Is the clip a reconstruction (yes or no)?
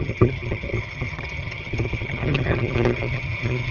yes